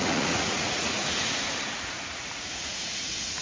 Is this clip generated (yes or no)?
yes